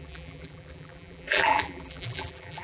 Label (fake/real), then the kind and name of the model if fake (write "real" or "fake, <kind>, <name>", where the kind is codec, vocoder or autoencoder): fake, vocoder, BigVGAN v2